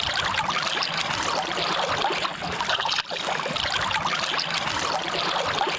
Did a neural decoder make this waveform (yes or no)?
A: no